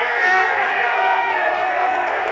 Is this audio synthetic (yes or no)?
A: yes